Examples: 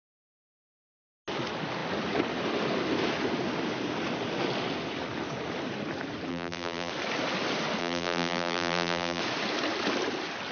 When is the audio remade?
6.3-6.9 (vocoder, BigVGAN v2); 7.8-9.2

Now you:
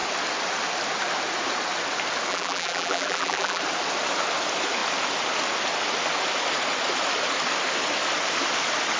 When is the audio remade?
2.3-3.6 (vocoder, BigVGAN v2)

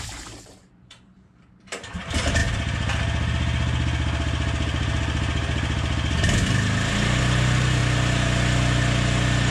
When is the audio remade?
0.0-2.4 (vocoder, BigVGAN v2); 7.2-7.8

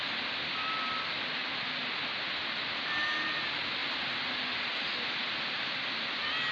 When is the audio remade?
none

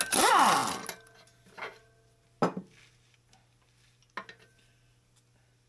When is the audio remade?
none

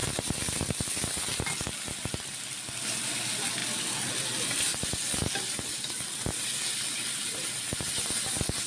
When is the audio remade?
4.7-7.6 (vocoder, BigVGAN v2)

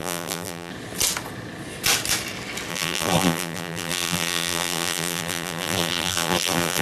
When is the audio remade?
0.0-0.7 (vocoder, BigVGAN v2); 2.7-6.8